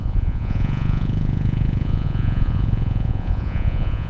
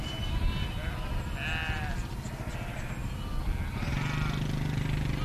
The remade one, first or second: first